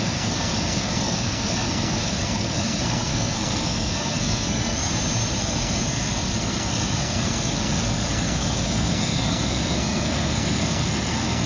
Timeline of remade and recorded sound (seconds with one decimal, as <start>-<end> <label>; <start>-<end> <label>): 0.0-4.9 remade; 4.9-5.4 recorded; 5.4-11.5 remade